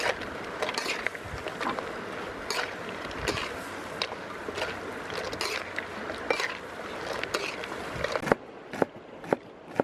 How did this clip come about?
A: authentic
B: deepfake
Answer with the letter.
A